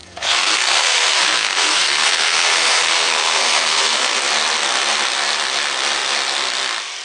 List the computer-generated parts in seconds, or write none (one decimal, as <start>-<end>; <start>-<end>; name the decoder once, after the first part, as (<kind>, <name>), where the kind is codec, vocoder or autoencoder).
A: 0.0-4.2 (codec, SNAC)